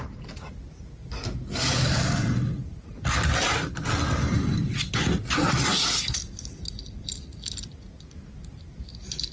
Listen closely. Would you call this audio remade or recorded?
recorded